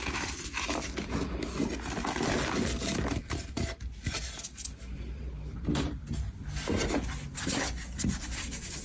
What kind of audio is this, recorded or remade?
recorded